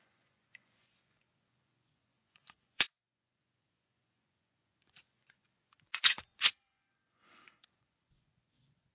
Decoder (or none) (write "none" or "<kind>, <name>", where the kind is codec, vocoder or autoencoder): vocoder, Vocos